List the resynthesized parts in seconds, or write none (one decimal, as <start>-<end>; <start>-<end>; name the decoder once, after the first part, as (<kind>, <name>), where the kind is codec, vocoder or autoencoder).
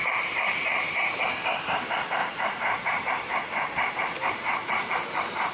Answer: 0.0-1.7 (vocoder, BigVGAN v2); 2.2-5.5